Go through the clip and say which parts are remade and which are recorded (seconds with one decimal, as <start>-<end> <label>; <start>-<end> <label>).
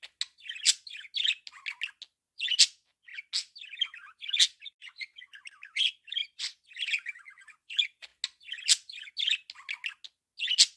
0.0-10.8 recorded